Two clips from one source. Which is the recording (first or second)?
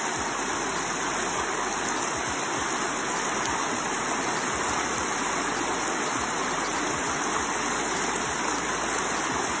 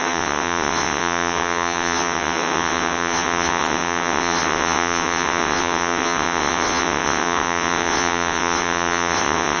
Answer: first